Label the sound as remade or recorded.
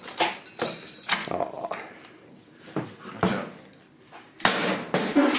recorded